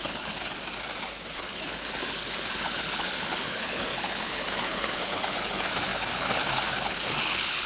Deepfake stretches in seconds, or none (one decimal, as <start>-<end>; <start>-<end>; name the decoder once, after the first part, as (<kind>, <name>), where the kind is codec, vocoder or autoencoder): 0.0-0.5 (codec, HILCodec); 1.3-7.7